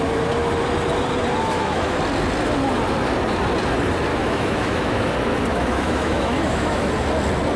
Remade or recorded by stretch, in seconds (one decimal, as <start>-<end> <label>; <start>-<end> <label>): 0.0-1.4 recorded; 1.4-2.0 remade; 2.0-4.1 recorded; 4.1-5.1 remade; 5.1-5.5 recorded; 5.5-6.9 remade; 6.9-7.6 recorded